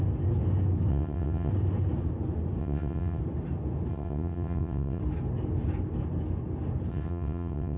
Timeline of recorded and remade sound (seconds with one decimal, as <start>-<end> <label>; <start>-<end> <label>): 0.0-0.9 recorded; 0.9-1.5 remade; 1.5-2.6 recorded; 2.6-3.2 remade; 3.2-3.9 recorded; 3.9-5.0 remade; 5.0-6.9 recorded; 6.9-7.8 remade